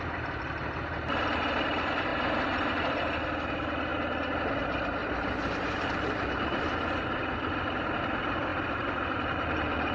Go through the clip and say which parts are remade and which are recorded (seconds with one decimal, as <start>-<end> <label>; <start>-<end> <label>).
0.0-2.1 recorded; 2.1-3.2 remade; 3.2-5.0 recorded; 5.0-6.6 remade; 6.6-8.5 recorded; 8.5-9.9 remade